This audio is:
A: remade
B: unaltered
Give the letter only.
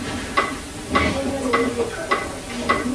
B